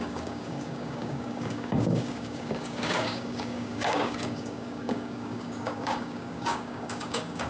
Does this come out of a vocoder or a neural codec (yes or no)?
yes